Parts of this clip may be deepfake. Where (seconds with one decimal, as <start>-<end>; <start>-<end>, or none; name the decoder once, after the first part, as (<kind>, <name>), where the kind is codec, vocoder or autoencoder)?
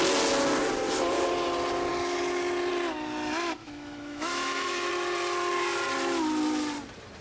3.6-4.9 (autoencoder, DAC-VAE)